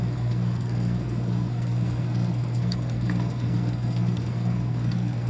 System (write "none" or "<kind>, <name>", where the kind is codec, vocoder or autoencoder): codec, SNAC